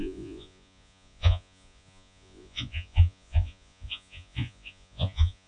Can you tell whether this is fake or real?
fake